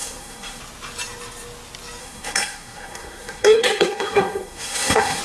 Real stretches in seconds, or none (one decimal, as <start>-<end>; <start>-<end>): 0.6-2.0